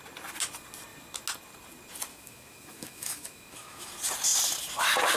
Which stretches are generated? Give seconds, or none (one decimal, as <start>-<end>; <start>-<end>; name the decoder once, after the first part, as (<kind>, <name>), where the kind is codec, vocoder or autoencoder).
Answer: 2.1-3.9 (autoencoder, DAC-VAE)

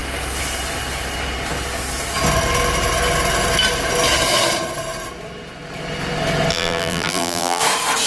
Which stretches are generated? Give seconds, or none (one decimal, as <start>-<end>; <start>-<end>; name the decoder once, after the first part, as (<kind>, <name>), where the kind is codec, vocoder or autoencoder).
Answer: 6.5-7.6 (vocoder, BigVGAN v2)

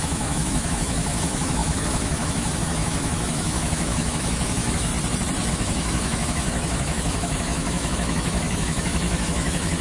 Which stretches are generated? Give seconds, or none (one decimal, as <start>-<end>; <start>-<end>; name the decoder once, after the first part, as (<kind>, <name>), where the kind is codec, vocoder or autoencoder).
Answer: 0.0-4.9 (autoencoder, DAC-VAE); 5.5-9.8

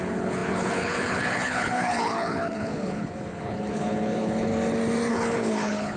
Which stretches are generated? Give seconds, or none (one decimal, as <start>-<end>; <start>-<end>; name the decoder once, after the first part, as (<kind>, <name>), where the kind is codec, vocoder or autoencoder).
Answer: 0.0-4.5 (codec, HILCodec); 5.1-6.0

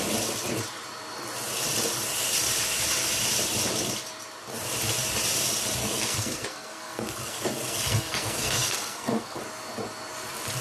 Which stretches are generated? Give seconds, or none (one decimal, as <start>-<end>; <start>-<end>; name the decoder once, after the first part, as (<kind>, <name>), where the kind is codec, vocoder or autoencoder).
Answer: 5.8-9.4 (codec, SNAC)

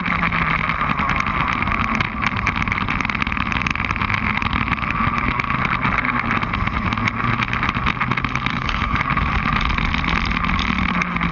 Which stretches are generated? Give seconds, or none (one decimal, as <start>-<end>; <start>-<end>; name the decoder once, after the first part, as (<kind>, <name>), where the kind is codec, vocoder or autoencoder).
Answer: 8.5-9.0 (codec, SNAC)

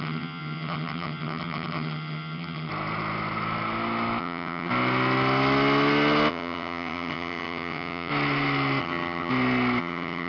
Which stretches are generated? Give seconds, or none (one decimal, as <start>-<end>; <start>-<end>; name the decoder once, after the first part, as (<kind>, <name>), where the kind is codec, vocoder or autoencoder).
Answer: 0.0-2.7 (vocoder, HiFi-GAN); 4.2-4.7; 6.3-8.1; 8.8-9.3; 9.8-10.3